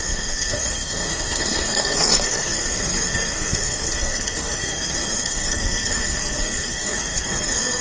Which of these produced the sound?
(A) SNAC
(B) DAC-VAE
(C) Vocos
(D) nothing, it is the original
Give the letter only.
A